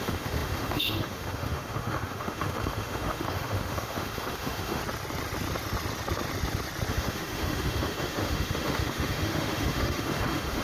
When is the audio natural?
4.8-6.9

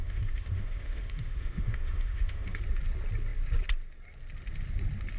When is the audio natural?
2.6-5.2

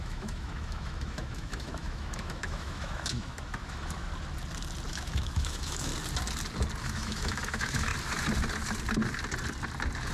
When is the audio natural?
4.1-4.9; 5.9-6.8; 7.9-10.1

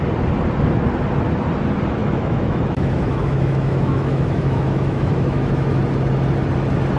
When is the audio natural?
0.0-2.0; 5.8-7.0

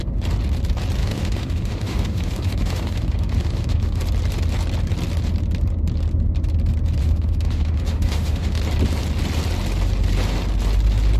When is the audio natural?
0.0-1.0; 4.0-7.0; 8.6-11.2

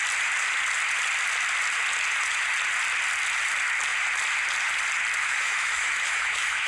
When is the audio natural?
0.0-5.2

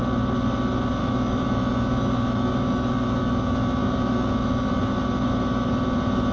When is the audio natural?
0.0-1.0; 4.8-6.3

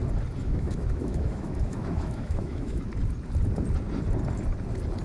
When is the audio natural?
0.0-0.4; 2.8-5.0